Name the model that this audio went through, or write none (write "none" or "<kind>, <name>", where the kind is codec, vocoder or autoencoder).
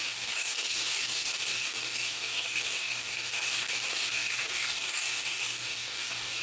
codec, DAC